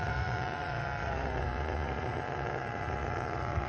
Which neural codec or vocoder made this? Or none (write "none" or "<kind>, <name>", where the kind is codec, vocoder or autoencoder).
vocoder, Vocos